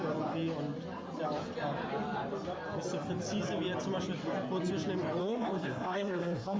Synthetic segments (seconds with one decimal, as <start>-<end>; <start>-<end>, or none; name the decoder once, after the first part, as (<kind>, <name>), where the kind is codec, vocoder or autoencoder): 5.2-6.6 (codec, SNAC)